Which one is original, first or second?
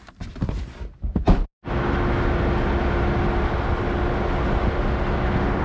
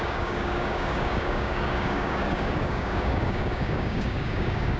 first